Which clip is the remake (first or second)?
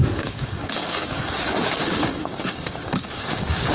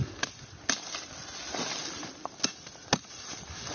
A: first